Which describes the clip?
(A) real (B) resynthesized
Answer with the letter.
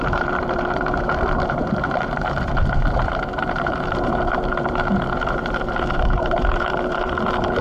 B